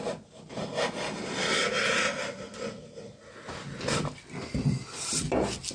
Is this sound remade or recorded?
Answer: recorded